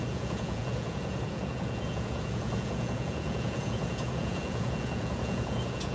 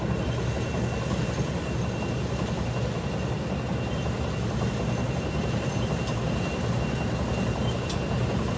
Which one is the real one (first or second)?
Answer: second